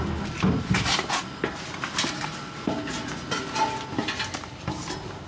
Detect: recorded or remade recorded